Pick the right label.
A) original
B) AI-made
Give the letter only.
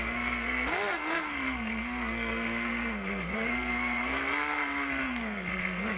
B